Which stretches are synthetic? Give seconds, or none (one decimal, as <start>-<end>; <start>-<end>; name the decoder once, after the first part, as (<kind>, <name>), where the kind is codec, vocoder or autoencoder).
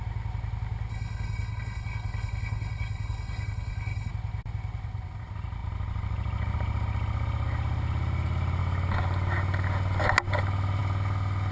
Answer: 0.9-4.1 (codec, HILCodec)